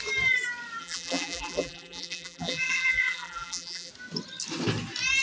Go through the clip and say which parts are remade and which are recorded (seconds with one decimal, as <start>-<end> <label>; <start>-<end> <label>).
0.0-0.8 recorded; 0.8-3.9 remade; 3.9-5.2 recorded